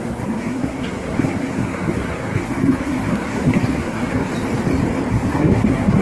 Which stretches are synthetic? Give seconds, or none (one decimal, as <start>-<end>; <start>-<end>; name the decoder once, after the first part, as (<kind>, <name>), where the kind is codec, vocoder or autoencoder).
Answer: 0.0-4.3 (codec, SNAC); 5.1-6.0